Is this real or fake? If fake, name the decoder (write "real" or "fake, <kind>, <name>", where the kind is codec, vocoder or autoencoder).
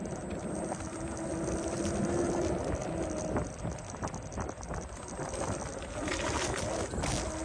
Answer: real